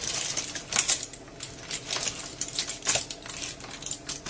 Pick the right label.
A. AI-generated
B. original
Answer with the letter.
B